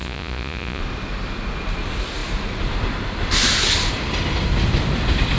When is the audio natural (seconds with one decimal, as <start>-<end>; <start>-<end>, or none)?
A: 0.8-5.4

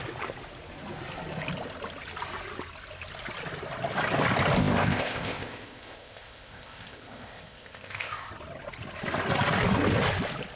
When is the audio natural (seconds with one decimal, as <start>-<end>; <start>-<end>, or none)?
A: 0.0-4.6; 8.3-10.6

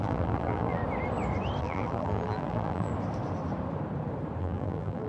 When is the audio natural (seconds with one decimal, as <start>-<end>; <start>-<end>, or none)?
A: 0.8-1.6; 2.9-4.4